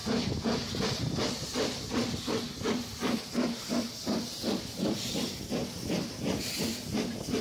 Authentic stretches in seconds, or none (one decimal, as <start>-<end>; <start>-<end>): 5.6-6.4